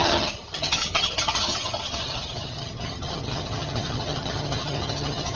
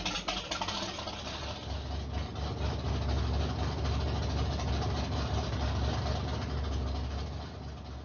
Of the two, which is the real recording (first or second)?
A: second